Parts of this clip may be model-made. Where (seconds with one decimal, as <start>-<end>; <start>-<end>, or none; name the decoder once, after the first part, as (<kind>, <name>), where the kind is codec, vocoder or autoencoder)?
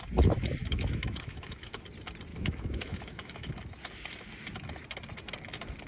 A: 0.6-1.8 (autoencoder, DAC-VAE); 2.3-3.5